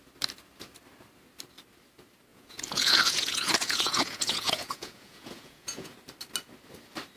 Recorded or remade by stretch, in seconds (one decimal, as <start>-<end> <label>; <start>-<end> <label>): 0.0-2.3 recorded; 2.3-5.9 remade; 5.9-7.2 recorded